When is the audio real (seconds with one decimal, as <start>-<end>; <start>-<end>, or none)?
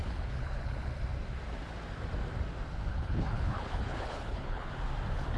0.9-2.9; 4.7-5.4